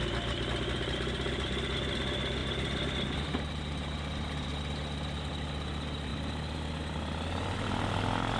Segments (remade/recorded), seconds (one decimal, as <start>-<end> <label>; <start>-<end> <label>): 0.0-8.4 recorded

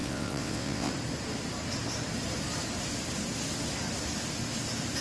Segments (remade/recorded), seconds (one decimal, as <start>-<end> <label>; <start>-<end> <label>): 0.0-0.9 remade; 0.9-5.0 recorded

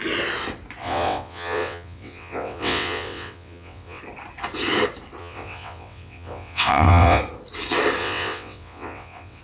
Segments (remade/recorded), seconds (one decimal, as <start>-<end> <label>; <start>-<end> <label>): 0.0-0.8 recorded; 0.8-4.0 remade; 4.0-5.2 recorded; 5.2-7.2 remade; 7.2-8.0 recorded; 8.0-9.4 remade

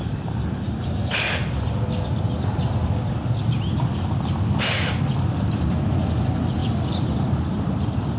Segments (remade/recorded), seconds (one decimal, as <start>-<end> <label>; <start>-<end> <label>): 0.0-8.2 recorded

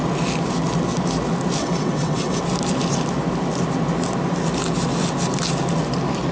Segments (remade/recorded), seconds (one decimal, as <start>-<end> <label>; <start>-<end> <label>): 0.0-1.6 recorded; 1.6-2.4 remade; 2.4-6.3 recorded